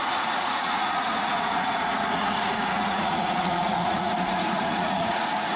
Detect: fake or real fake